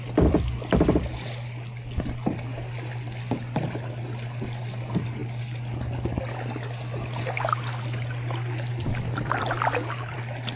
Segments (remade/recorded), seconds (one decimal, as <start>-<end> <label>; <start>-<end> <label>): 0.0-8.7 recorded; 8.7-10.2 remade; 10.2-10.6 recorded